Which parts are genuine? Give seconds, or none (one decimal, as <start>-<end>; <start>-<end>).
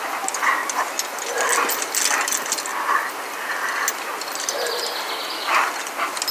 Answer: 0.0-6.3